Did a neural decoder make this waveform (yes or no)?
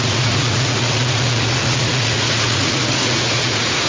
yes